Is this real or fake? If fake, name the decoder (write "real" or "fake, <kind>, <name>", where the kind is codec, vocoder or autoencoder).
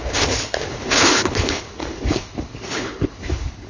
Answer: fake, codec, HILCodec